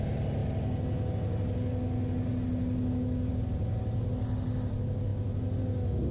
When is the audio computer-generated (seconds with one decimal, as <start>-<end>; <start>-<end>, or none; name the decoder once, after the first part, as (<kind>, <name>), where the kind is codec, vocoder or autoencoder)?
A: none